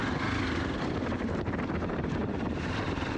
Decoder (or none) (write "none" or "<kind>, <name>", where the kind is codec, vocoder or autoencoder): none